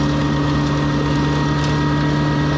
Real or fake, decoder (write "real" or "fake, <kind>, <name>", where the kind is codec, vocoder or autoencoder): real